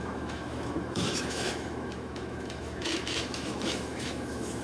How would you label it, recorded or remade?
remade